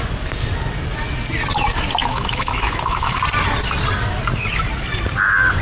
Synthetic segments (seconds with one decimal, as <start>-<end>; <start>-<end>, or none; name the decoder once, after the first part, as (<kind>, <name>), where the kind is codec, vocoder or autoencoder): 2.0-3.2 (autoencoder, DAC-VAE)